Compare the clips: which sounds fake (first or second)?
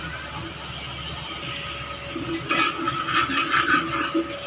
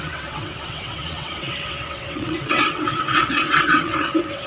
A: second